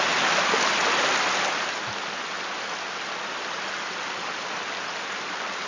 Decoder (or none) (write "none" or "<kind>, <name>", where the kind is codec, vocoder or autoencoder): none